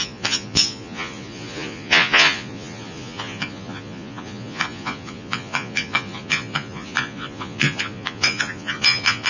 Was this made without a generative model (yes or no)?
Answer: no